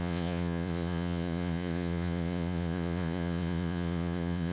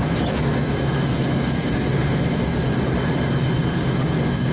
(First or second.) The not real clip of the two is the first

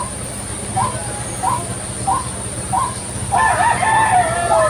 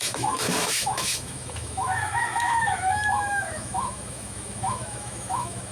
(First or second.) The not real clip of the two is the second